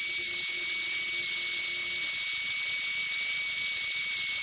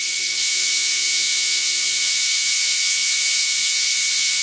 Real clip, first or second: first